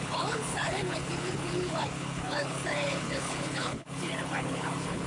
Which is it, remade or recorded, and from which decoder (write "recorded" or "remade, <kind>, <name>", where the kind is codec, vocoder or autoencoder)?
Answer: remade, codec, HILCodec